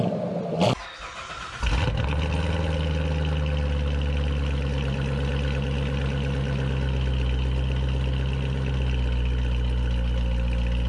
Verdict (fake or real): real